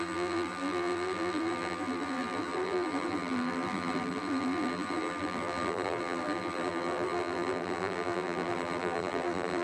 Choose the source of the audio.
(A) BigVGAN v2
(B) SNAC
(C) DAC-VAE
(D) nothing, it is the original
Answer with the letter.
A